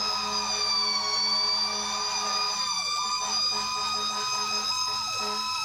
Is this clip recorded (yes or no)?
yes